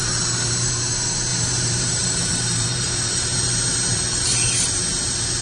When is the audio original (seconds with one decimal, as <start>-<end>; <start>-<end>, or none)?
0.7-1.3; 4.5-5.4